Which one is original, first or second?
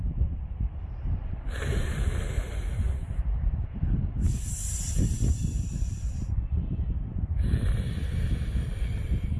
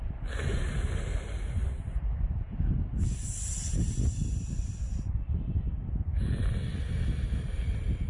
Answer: second